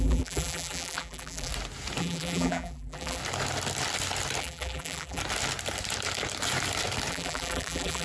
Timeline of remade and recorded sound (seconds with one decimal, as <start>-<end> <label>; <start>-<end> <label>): 0.0-1.5 remade; 1.5-2.0 recorded; 2.0-3.2 remade; 3.2-4.4 recorded; 4.4-5.2 remade; 5.2-7.1 recorded; 7.1-8.0 remade